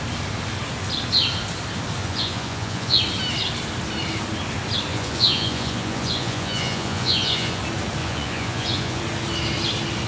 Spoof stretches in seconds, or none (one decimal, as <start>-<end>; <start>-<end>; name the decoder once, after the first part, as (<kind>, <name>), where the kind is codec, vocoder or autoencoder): 2.0-3.0 (vocoder, Vocos); 4.9-7.6; 8.0-9.0